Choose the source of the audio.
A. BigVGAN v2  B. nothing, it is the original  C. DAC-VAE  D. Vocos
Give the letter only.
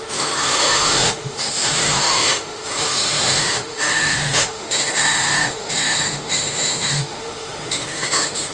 C